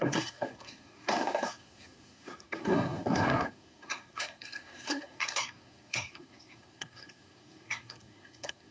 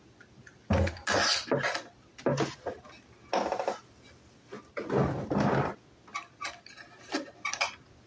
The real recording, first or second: second